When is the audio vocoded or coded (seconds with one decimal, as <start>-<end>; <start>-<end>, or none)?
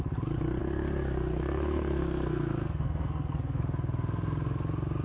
0.6-3.6